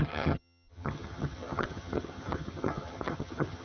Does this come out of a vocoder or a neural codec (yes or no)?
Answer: yes